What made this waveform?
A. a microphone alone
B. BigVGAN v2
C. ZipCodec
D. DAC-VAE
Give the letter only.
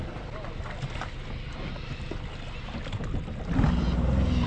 A